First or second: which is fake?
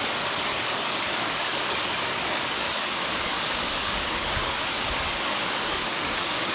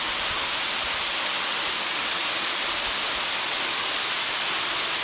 first